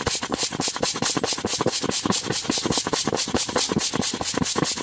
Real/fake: real